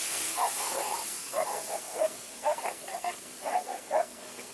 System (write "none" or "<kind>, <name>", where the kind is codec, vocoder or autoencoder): codec, SNAC